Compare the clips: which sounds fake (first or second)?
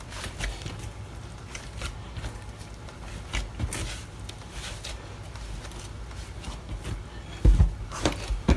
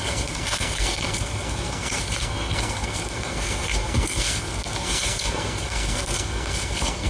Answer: second